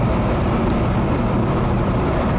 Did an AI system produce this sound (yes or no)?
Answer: no